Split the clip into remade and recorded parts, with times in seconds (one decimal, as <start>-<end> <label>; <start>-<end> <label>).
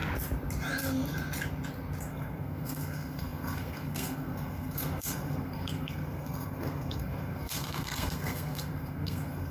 0.0-2.0 recorded; 2.0-9.5 remade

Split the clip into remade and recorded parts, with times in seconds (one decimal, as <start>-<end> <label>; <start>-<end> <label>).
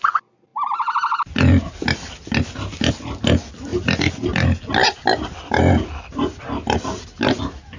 0.0-7.8 recorded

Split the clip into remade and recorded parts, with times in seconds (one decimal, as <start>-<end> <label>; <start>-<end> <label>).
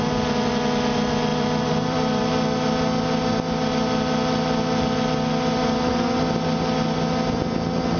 0.0-1.3 recorded; 1.3-2.3 remade; 2.3-8.0 recorded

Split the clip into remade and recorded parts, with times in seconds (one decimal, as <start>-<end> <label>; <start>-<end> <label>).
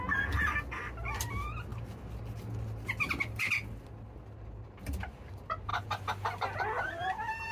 0.0-7.5 recorded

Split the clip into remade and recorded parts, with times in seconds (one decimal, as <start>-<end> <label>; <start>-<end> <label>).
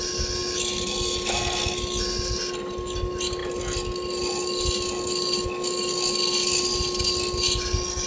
0.0-8.1 recorded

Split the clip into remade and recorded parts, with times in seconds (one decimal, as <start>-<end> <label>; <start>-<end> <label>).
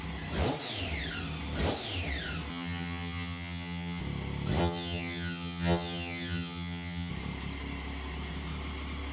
0.0-2.5 recorded; 2.5-4.0 remade; 4.0-4.6 recorded; 4.6-7.1 remade; 7.1-9.1 recorded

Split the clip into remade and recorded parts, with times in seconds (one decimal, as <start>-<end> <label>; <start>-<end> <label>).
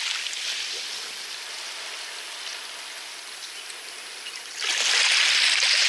0.0-5.9 recorded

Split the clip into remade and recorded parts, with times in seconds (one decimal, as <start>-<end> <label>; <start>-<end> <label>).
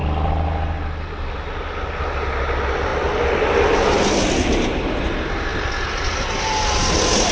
0.0-7.3 recorded